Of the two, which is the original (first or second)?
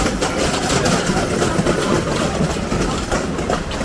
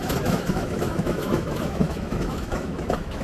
first